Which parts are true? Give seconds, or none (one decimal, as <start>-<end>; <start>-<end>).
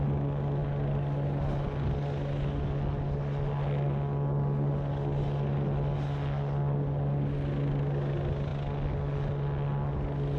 0.0-10.4